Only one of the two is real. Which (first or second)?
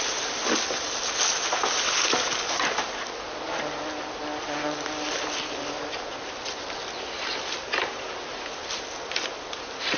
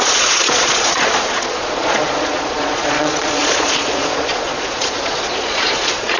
first